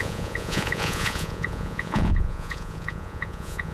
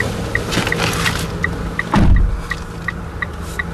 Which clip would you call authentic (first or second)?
second